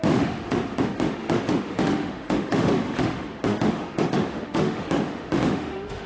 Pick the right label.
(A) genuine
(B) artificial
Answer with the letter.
B